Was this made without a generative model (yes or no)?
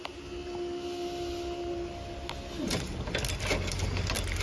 yes